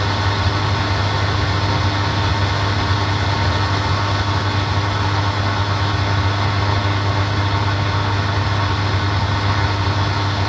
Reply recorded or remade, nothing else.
recorded